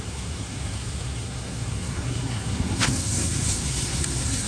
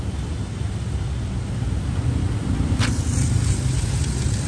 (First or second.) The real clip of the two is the second